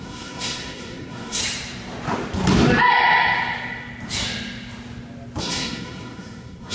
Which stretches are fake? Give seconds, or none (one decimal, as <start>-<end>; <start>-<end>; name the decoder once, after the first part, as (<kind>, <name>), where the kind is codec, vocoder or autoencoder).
0.0-1.4 (codec, SNAC); 5.4-6.7

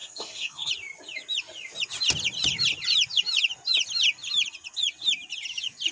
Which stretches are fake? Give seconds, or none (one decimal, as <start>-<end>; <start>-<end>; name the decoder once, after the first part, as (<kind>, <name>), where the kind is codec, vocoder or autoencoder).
0.0-0.7 (codec, SNAC)

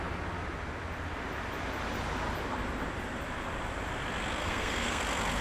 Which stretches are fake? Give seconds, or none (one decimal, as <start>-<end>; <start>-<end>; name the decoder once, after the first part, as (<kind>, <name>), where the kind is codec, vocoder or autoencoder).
4.4-5.0 (codec, SNAC)

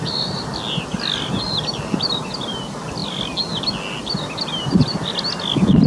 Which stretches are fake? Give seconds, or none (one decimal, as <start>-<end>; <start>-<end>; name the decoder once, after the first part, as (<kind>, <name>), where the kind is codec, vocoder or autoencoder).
none

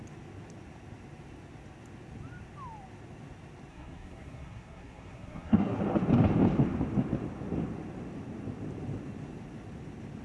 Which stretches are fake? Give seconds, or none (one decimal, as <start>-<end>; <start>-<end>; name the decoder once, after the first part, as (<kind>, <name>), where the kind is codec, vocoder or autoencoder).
3.7-5.8 (codec, SNAC)

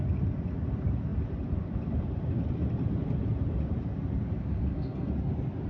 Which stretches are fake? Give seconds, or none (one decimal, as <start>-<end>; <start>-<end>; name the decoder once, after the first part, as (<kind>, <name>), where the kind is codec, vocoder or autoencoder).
4.4-5.1 (codec, SNAC)

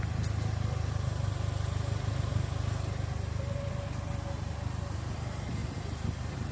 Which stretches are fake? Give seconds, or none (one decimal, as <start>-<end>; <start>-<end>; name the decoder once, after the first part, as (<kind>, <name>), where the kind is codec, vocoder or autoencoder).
none

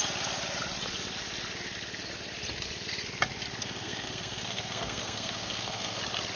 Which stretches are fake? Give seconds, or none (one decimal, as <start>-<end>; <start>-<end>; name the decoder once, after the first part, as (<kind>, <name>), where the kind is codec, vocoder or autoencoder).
3.6-6.0 (codec, SNAC)